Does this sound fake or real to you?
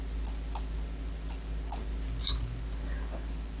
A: real